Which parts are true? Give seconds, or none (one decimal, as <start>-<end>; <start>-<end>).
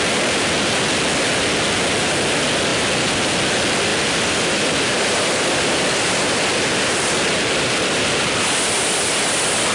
0.0-3.9; 8.4-9.7